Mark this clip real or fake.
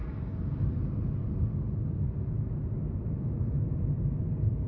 real